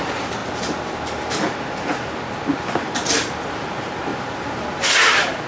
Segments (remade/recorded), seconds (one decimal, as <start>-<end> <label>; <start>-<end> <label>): 0.0-0.4 remade; 0.4-3.5 recorded; 3.5-4.1 remade; 4.1-5.1 recorded; 5.1-5.5 remade

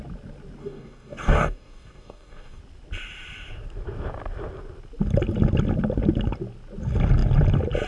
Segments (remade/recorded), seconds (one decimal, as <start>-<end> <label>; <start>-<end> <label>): 0.0-0.6 recorded; 0.6-2.6 remade; 2.6-7.9 recorded

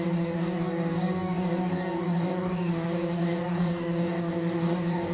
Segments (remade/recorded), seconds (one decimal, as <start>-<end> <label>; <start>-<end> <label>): 0.0-5.1 remade

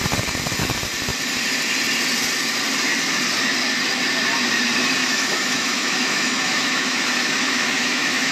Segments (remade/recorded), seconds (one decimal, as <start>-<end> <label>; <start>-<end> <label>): 0.0-5.0 recorded; 5.0-8.3 remade